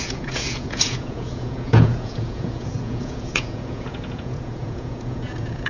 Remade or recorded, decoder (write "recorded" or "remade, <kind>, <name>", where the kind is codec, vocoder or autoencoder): remade, vocoder, Vocos